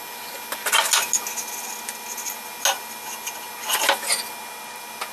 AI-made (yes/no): no